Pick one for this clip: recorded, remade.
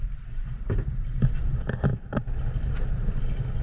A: recorded